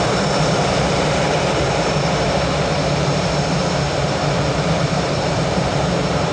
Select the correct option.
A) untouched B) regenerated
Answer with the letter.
B